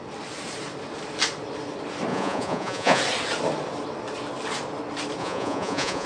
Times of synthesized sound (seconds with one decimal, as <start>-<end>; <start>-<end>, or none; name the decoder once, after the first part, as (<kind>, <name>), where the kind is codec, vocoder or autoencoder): 2.1-3.0 (vocoder, Vocos); 5.2-6.1